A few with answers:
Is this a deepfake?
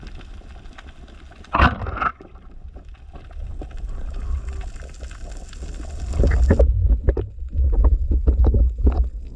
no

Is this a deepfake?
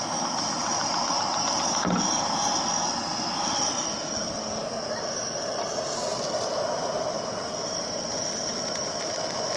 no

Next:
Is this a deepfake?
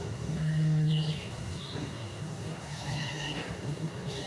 yes